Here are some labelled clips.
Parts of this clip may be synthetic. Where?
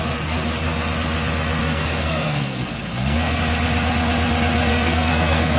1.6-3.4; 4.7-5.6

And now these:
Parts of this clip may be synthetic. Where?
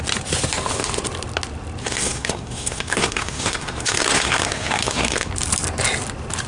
1.8-5.3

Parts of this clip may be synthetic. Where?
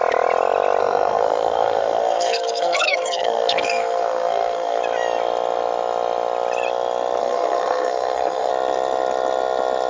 0.8-4.8; 7.2-8.5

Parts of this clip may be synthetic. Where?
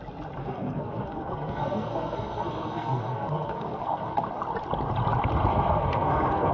0.4-4.3; 5.5-6.5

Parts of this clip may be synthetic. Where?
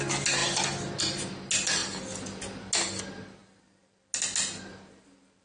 none